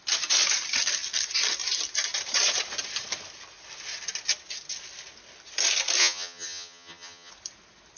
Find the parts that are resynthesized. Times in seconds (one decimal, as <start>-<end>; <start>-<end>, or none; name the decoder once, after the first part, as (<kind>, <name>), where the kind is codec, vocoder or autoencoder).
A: 6.0-7.3 (vocoder, HiFi-GAN)